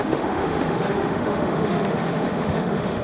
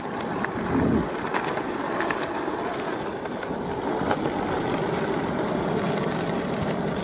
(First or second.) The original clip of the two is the second